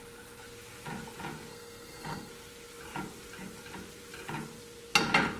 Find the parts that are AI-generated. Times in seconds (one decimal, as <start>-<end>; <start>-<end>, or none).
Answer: 1.5-2.3